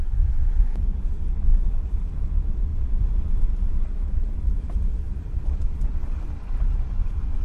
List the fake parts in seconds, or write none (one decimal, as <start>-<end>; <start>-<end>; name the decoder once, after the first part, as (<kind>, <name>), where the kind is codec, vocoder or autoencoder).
0.0-7.4 (vocoder, BigVGAN v2)